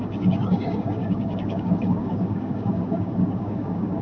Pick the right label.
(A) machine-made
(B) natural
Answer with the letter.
A